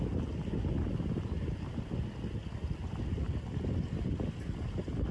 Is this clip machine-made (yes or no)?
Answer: no